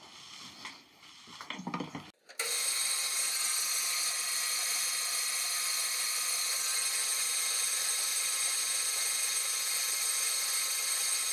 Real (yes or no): yes